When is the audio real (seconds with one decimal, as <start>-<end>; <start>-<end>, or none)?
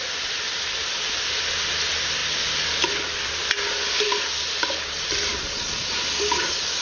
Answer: 0.0-5.3; 5.9-6.8